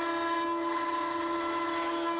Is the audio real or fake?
real